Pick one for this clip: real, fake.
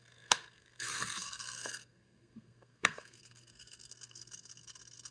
fake